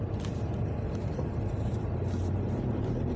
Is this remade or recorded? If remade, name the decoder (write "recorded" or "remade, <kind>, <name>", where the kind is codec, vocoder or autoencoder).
recorded